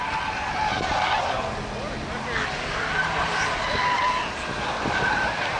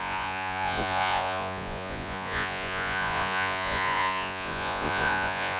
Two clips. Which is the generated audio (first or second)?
second